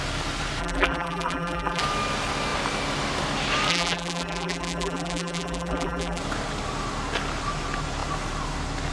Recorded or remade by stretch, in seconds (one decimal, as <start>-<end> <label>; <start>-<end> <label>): 0.0-0.6 recorded; 0.6-1.8 remade; 1.8-3.7 recorded; 3.7-6.2 remade; 6.2-8.9 recorded